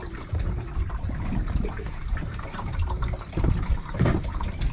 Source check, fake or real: fake